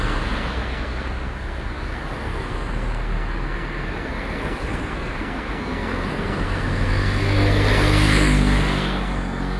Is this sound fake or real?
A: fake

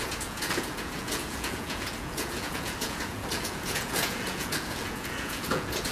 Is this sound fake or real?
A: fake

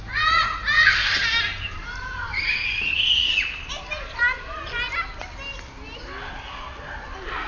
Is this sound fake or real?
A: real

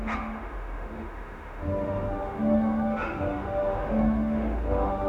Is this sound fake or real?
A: fake